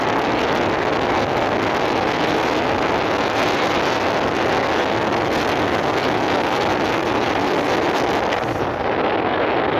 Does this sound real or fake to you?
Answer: real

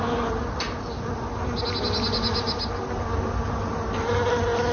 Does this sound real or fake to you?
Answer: real